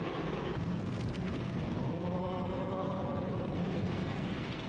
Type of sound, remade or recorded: remade